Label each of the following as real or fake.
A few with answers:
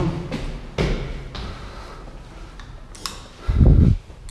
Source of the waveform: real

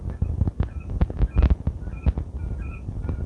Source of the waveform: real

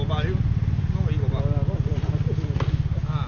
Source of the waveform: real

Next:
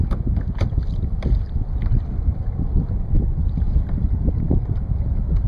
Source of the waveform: real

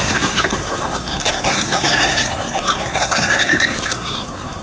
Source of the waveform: fake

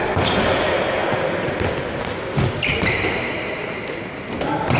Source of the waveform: real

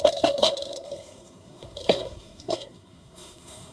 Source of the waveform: fake